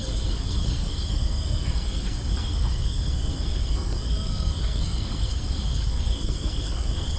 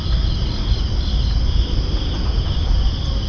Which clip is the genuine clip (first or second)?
second